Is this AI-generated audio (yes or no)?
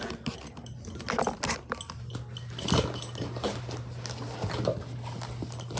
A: no